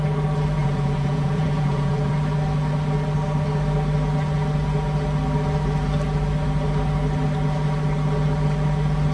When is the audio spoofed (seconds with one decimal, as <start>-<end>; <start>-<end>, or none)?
0.6-2.1